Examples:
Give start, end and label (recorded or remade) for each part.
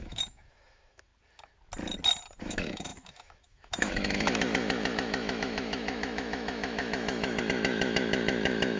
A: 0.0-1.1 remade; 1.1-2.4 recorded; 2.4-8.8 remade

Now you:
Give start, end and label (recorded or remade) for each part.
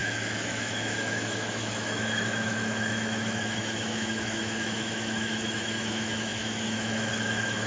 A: 0.0-7.7 remade